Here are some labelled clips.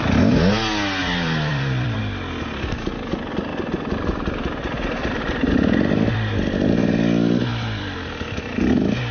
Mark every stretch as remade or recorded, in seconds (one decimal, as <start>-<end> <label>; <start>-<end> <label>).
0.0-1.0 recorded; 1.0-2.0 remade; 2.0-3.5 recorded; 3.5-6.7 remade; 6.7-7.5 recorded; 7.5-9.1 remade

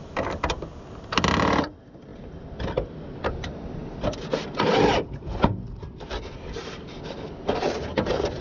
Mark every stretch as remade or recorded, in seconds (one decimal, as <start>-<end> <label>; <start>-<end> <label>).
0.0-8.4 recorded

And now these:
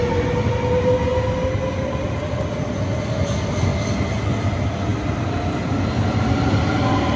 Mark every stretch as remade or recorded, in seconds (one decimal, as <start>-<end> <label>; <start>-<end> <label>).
0.0-7.2 recorded

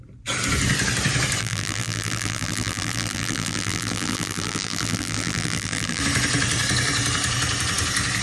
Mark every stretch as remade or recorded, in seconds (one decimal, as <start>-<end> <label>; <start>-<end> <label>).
0.0-1.4 recorded; 1.4-6.0 remade; 6.0-8.2 recorded